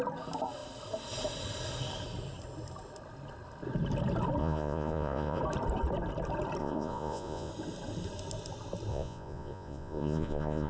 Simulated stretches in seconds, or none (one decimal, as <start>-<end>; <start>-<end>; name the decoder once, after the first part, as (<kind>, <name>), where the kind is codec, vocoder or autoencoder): 4.4-5.4 (vocoder, Vocos); 6.6-7.5; 8.9-10.7